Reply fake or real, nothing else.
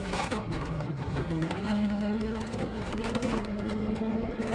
fake